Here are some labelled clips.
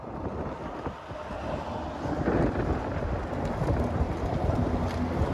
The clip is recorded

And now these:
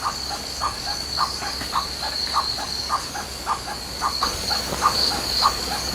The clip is remade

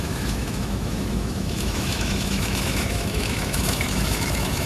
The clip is remade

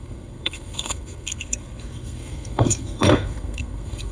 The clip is remade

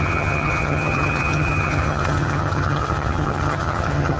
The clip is remade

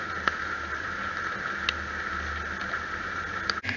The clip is recorded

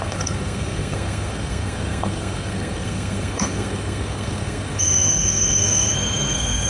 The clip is remade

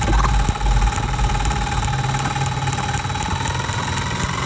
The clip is recorded